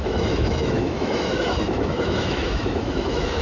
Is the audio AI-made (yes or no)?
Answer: yes